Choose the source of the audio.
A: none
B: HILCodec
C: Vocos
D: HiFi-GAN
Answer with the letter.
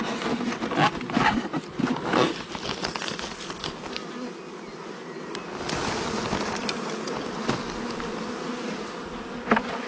A